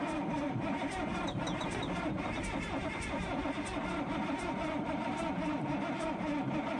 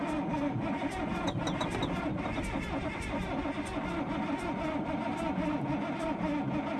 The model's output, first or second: first